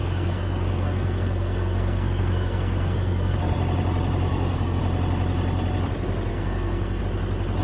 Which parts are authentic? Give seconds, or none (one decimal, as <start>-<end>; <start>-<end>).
3.4-4.3; 4.8-6.3; 7.0-7.6